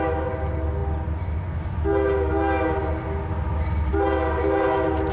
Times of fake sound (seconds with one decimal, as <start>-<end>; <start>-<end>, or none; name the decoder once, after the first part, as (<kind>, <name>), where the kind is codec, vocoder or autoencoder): none

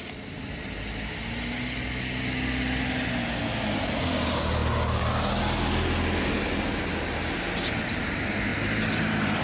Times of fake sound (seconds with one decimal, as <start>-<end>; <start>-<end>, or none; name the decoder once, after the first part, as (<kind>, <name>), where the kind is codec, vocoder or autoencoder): none

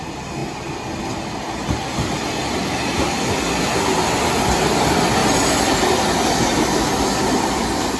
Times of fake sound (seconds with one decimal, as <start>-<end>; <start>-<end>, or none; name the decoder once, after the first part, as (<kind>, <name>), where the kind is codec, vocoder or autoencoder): none

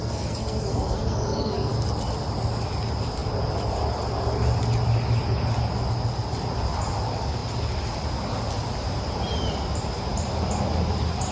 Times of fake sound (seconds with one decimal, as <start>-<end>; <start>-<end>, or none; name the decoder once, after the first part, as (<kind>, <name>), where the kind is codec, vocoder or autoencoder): 0.0-1.7 (codec, SNAC)

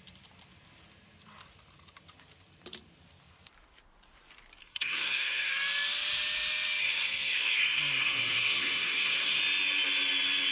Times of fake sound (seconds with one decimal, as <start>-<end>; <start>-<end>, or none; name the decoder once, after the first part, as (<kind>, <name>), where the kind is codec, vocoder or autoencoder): 4.6-5.5 (codec, SNAC); 6.8-9.4

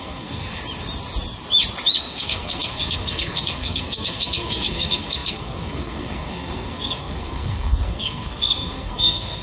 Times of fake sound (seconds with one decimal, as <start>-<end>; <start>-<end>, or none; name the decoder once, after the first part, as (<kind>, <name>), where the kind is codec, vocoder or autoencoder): 0.0-0.6 (codec, SNAC); 2.0-9.4

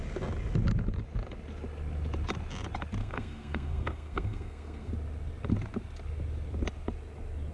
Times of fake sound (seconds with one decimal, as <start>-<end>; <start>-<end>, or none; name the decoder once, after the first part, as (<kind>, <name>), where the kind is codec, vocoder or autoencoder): 3.0-4.9 (codec, SNAC)